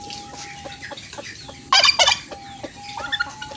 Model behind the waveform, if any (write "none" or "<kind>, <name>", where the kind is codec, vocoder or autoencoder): none